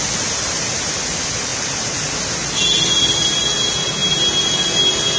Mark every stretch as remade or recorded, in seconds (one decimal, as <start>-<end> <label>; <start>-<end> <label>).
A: 0.0-5.2 recorded